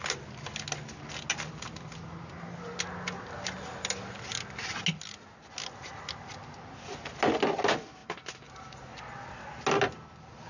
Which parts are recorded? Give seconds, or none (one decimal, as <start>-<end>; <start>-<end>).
0.0-8.0; 8.7-10.5